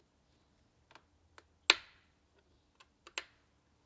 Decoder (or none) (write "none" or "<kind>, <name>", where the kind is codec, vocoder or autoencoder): none